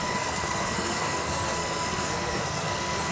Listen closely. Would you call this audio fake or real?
fake